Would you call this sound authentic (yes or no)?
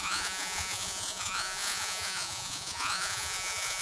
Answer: no